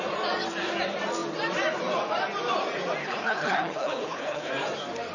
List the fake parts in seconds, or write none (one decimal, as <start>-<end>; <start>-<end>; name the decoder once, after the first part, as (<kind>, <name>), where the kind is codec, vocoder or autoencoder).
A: 3.0-4.5 (codec, HILCodec)